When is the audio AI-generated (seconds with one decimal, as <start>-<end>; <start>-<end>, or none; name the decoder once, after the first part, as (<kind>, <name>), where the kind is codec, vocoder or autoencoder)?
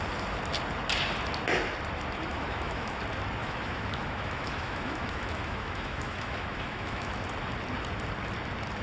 2.3-3.0 (autoencoder, DAC-VAE); 3.4-7.1